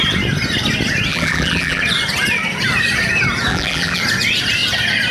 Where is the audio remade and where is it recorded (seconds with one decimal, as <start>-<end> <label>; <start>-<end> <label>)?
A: 0.0-1.1 recorded; 1.1-1.8 remade; 1.8-3.5 recorded; 3.5-4.0 remade; 4.0-5.1 recorded